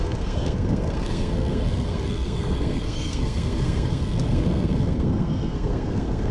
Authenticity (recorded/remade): remade